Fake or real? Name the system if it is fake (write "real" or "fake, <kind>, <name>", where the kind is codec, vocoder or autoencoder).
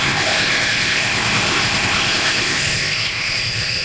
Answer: fake, codec, ZipCodec